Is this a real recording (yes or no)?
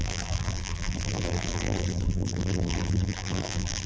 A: no